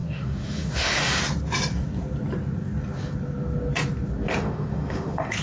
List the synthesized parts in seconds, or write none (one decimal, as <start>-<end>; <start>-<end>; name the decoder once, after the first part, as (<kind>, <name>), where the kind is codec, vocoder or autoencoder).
0.0-1.2 (autoencoder, DAC-VAE); 4.4-5.4